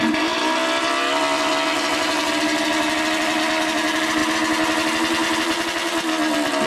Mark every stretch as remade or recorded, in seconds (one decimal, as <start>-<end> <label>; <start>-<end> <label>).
0.0-6.7 recorded